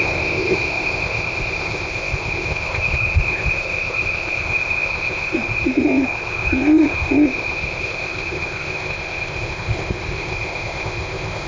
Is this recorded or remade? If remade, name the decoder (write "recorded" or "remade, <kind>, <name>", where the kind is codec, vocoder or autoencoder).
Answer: remade, codec, ZipCodec